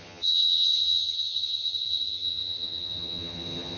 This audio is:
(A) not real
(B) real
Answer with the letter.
A